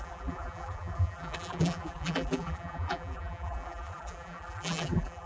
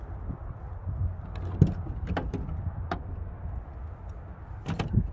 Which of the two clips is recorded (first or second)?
second